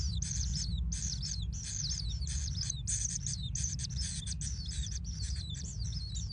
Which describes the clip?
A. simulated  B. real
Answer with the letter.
B